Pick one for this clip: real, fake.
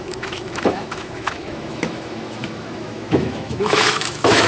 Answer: fake